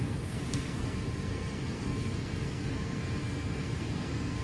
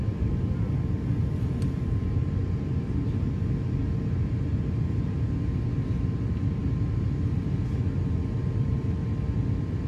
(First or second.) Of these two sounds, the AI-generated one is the first